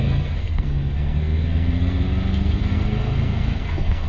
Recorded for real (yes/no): no